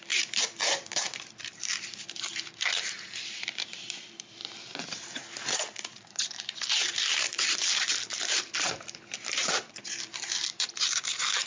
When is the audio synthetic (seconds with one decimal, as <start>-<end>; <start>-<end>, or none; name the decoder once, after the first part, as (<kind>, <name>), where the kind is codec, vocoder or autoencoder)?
0.0-4.4 (vocoder, BigVGAN v2); 5.8-11.5